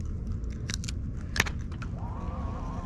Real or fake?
real